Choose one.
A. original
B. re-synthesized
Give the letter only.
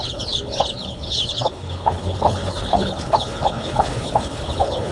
B